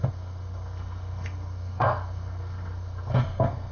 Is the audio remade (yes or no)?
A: yes